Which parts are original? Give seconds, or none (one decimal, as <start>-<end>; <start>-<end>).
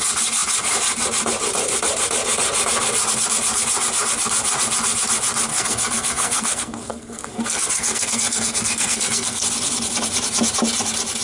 0.0-5.5; 9.4-11.2